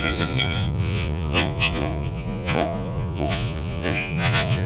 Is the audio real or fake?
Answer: fake